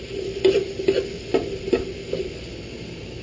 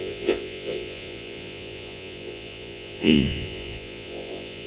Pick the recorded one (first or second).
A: first